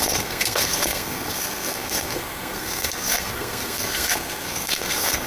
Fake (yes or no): yes